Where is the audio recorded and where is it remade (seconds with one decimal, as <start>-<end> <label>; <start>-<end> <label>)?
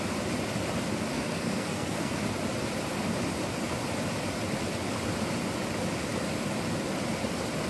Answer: 0.0-1.1 recorded; 1.1-2.2 remade; 2.2-7.7 recorded